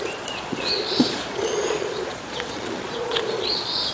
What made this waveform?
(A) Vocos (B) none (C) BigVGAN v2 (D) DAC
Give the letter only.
A